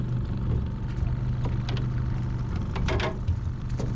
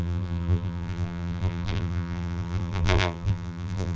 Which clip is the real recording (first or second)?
first